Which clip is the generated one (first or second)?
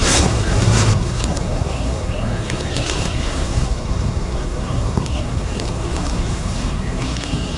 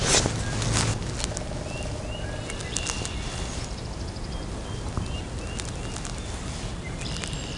first